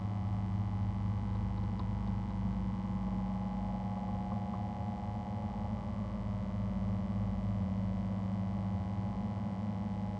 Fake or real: real